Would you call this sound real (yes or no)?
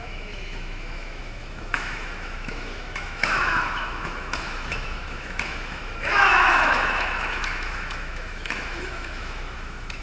no